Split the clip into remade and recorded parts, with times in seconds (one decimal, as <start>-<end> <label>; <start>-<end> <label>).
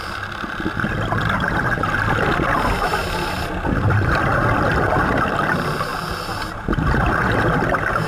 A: 0.0-8.1 recorded